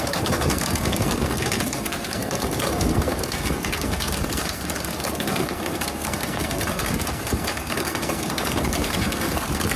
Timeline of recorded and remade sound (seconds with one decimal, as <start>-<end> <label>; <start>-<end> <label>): 0.0-9.8 remade